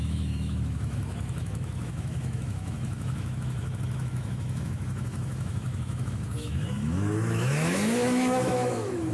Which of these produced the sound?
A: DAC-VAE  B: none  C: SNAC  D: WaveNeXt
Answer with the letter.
A